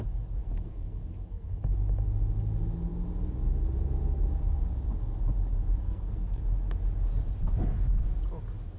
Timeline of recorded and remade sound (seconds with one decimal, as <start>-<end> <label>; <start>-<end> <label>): 0.0-0.4 recorded; 0.4-1.6 remade; 1.6-5.8 recorded; 5.8-6.4 remade; 6.4-8.8 recorded